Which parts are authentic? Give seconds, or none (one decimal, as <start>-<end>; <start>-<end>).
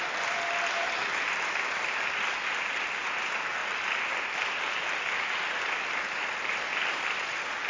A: 0.0-7.7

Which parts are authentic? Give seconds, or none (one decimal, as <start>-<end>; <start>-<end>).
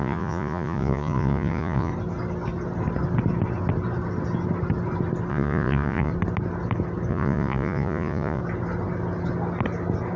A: 1.9-5.3; 6.1-7.1; 8.4-10.2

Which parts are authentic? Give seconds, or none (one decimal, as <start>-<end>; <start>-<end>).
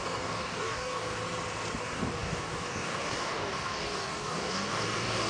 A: 1.2-1.8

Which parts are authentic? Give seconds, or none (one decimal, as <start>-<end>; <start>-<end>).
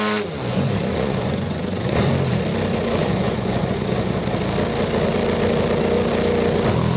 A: 0.0-0.5; 2.1-3.0; 4.2-7.0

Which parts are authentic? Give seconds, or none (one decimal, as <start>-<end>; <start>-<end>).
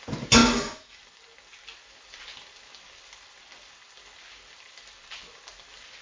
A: 0.0-0.4; 1.0-6.0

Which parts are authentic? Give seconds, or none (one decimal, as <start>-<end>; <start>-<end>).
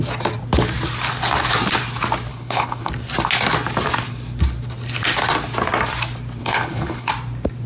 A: 0.0-2.3; 2.9-6.4; 7.1-7.7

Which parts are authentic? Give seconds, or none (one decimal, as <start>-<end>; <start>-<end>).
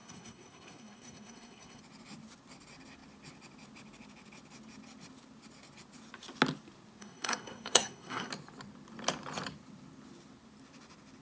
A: 1.8-7.0; 8.3-11.2